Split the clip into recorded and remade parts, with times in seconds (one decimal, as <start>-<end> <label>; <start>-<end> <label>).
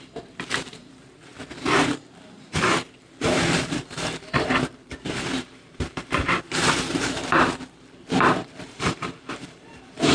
0.0-10.1 remade